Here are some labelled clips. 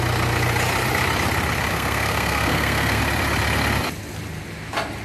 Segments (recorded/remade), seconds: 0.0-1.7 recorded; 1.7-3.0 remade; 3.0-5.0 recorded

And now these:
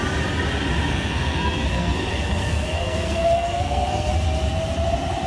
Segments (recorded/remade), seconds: 0.0-0.9 recorded; 0.9-4.1 remade; 4.1-5.3 recorded

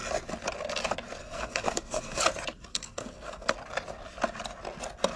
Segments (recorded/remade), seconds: 0.0-1.2 recorded; 1.2-2.2 remade; 2.2-2.7 recorded; 2.7-3.5 remade; 3.5-5.2 recorded

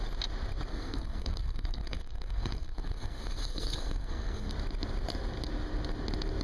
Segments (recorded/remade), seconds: 0.0-0.7 recorded; 0.7-4.5 remade; 4.5-6.4 recorded

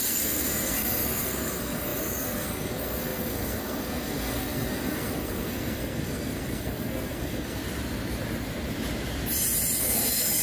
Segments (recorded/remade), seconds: 0.0-7.6 remade; 7.6-9.8 recorded; 9.8-10.4 remade